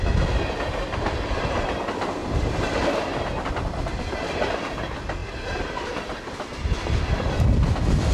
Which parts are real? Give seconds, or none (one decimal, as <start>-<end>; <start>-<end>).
0.0-2.2; 3.5-8.1